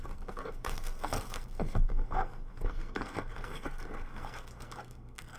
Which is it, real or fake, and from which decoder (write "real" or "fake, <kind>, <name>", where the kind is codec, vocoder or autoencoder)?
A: fake, codec, SNAC